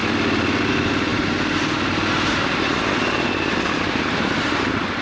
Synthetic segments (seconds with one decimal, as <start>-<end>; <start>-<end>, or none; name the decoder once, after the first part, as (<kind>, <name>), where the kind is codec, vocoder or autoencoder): none